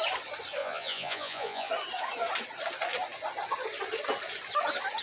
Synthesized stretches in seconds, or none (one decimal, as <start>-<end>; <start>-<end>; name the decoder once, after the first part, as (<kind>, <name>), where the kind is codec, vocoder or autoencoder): 0.6-1.7 (vocoder, Vocos)